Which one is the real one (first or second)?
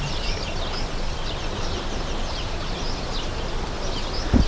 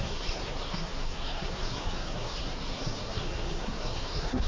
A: first